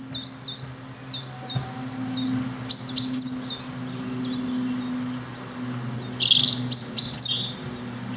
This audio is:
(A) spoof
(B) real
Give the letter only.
B